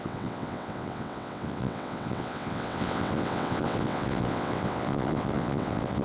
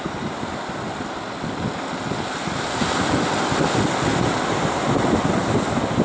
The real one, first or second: second